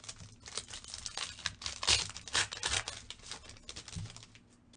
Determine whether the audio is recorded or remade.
recorded